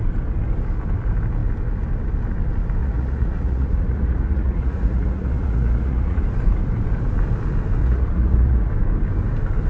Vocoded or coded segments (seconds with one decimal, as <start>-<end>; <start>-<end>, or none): 2.8-6.2; 7.8-8.7